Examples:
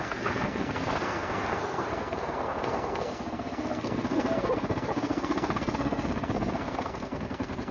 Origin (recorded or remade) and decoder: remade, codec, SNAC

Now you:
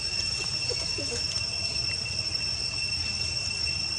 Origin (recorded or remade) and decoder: recorded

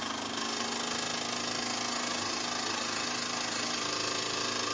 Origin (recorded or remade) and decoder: recorded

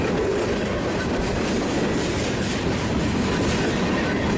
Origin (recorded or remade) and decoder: recorded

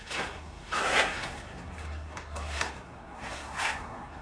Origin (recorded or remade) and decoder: remade, codec, SNAC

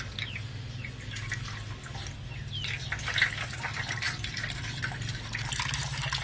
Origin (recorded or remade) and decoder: recorded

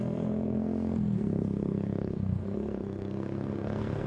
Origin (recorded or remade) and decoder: remade, codec, SNAC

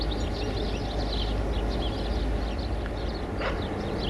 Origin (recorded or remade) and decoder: recorded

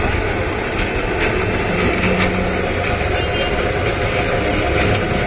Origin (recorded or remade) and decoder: recorded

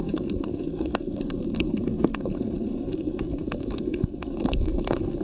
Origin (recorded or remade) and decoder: remade, codec, SNAC